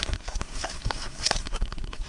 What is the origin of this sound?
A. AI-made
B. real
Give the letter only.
A